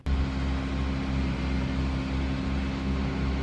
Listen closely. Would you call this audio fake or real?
real